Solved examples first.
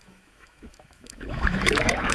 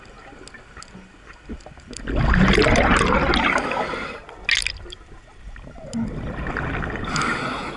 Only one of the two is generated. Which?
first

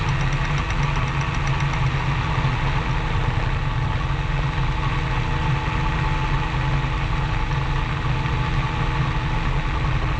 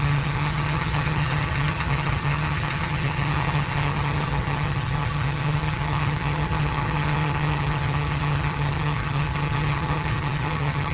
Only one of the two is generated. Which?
second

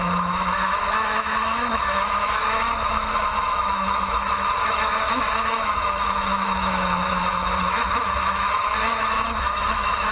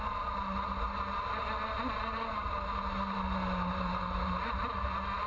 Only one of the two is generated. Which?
first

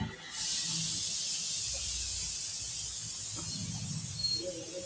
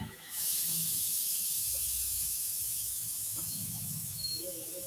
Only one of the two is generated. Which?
second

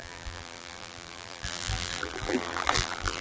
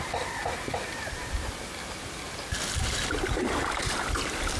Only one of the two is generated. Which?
first